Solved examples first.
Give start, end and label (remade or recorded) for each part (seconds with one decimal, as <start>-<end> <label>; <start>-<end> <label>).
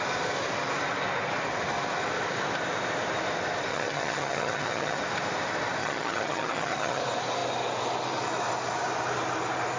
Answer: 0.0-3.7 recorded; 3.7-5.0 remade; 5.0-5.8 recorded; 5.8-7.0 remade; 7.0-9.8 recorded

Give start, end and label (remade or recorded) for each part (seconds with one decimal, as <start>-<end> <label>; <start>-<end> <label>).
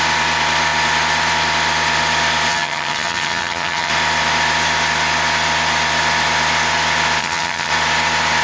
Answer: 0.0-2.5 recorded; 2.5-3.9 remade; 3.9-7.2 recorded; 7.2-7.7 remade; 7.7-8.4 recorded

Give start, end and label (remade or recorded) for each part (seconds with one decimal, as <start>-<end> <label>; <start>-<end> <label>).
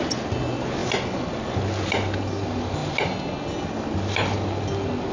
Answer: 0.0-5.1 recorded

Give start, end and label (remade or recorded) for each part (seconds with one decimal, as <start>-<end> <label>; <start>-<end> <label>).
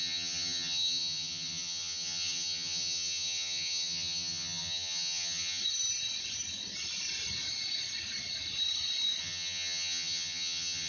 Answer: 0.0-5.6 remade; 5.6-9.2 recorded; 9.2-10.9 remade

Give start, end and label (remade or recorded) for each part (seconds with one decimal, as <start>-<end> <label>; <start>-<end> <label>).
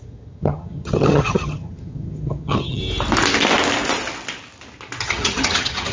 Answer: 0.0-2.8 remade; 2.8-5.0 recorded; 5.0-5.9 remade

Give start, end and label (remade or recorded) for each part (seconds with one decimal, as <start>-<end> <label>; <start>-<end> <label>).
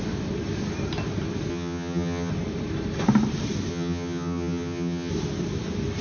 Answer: 0.0-1.5 recorded; 1.5-2.3 remade; 2.3-3.7 recorded; 3.7-5.1 remade; 5.1-6.0 recorded